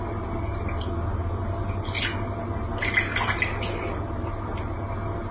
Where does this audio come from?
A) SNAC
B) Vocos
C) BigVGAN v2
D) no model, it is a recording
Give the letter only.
D